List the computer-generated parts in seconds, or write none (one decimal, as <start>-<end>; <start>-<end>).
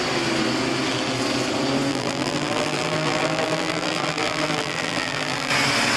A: 1.9-5.5